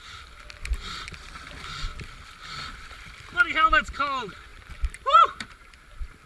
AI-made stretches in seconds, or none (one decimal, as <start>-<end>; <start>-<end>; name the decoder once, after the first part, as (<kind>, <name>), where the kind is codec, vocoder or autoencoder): 1.9-3.0 (vocoder, BigVGAN v2); 4.5-5.6